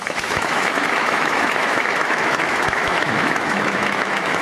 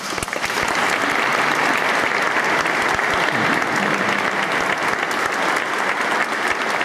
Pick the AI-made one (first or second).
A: first